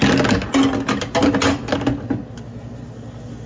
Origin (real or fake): real